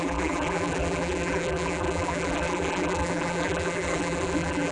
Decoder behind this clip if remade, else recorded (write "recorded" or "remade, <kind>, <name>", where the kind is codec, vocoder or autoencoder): remade, vocoder, BigVGAN v2